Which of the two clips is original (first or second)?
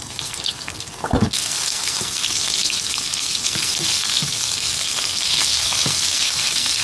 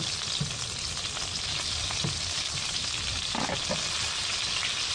second